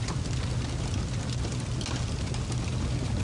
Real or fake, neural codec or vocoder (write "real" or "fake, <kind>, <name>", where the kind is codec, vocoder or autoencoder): real